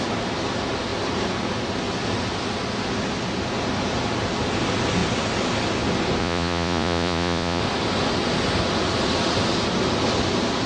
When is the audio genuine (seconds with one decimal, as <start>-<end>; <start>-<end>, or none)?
0.0-6.2; 7.6-10.7